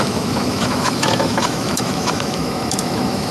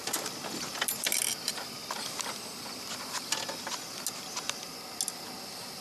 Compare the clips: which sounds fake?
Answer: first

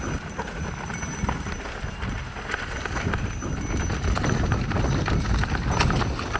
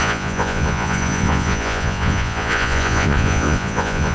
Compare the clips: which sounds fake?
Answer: second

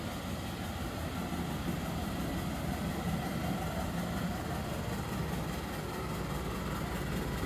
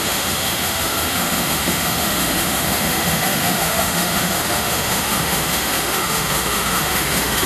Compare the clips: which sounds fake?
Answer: second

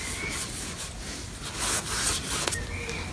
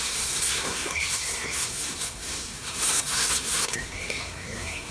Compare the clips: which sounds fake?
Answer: second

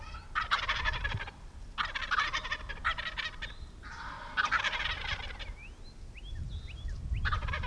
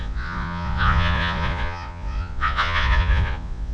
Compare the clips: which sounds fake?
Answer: second